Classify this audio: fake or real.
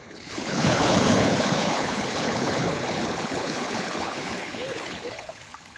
fake